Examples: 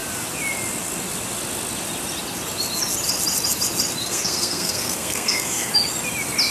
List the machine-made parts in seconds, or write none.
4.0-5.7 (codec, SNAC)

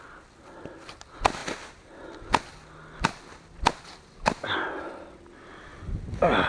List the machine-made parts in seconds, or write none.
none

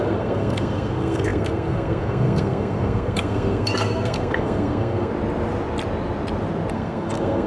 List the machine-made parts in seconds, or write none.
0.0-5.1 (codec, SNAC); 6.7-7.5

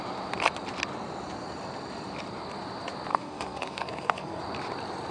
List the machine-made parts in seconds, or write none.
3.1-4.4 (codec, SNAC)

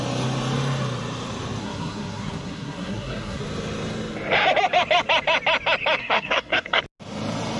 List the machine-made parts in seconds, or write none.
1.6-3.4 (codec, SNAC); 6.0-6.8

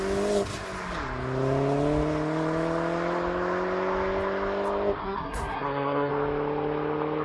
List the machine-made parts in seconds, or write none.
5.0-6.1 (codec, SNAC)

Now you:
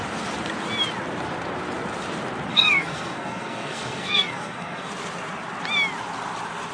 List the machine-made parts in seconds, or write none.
2.5-4.9 (codec, SNAC)

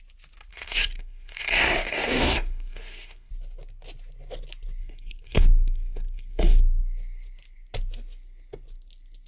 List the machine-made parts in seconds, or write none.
0.5-3.3 (codec, SNAC); 4.8-6.8